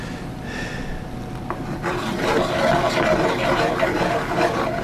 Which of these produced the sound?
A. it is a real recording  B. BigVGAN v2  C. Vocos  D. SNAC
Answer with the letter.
A